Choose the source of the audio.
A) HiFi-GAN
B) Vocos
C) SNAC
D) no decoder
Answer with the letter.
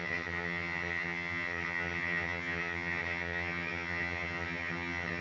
A